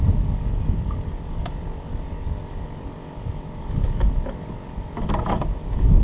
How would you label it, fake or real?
fake